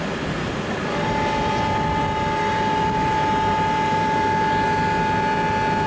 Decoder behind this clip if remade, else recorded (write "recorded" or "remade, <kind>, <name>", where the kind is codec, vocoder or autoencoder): recorded